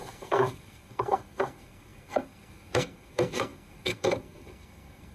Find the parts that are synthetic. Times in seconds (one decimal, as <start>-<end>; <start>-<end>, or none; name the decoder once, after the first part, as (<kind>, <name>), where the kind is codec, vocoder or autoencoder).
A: 0.0-5.1 (codec, SNAC)